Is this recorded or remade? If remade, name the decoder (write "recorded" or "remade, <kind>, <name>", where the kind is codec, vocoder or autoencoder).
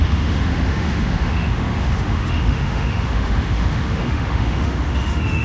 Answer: remade, autoencoder, DAC-VAE